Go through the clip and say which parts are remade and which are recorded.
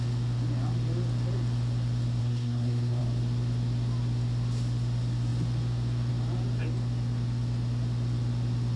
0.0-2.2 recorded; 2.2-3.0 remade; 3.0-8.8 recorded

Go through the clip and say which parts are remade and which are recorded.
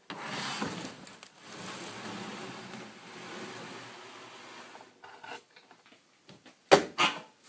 0.0-7.5 recorded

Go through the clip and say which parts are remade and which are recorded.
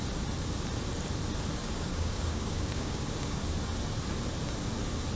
0.0-1.6 recorded; 1.6-3.4 remade; 3.4-5.2 recorded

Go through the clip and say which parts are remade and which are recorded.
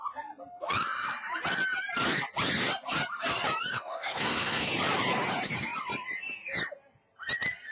0.0-3.7 recorded; 3.7-4.7 remade; 4.7-7.7 recorded